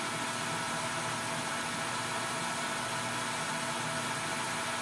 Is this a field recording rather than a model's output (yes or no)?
yes